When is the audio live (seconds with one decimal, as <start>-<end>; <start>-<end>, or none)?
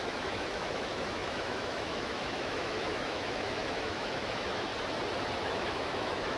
4.7-5.4